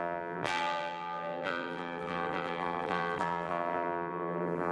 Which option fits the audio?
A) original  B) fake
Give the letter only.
B